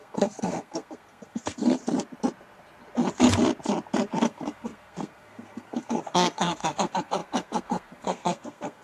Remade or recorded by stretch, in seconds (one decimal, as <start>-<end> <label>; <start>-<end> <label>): 0.0-1.8 remade; 1.8-4.1 recorded; 4.1-8.8 remade